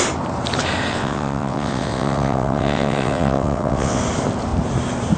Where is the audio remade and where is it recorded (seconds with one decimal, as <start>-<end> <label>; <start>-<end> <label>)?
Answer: 0.0-0.9 recorded; 0.9-4.0 remade; 4.0-5.2 recorded